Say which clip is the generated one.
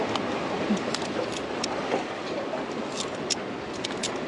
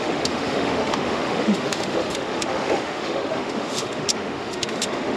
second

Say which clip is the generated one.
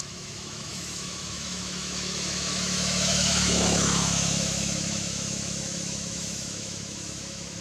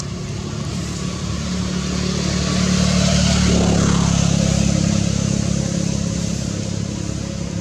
first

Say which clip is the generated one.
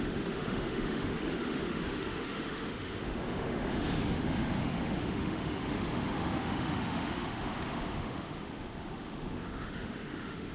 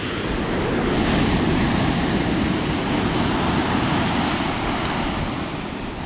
first